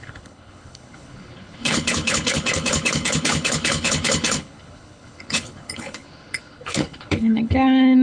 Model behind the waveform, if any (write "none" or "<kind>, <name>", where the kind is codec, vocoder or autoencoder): codec, HILCodec